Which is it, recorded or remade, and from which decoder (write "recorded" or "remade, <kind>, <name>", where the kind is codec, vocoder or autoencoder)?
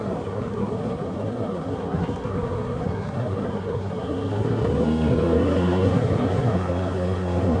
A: remade, codec, SNAC